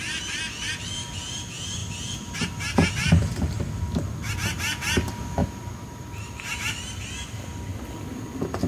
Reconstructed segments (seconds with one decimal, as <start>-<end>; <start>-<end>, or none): 5.4-7.1